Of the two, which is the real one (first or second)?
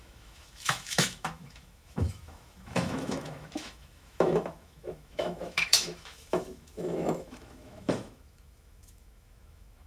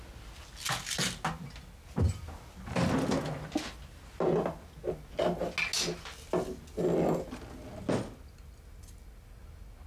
second